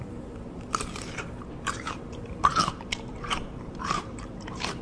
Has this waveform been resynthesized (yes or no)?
yes